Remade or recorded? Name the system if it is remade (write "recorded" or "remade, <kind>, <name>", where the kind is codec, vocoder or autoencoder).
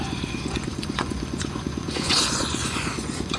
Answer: remade, vocoder, Vocos